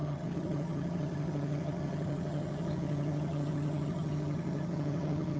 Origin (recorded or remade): remade